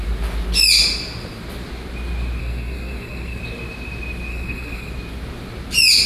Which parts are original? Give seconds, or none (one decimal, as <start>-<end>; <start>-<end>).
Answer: 0.0-2.4; 3.4-4.3; 4.9-6.1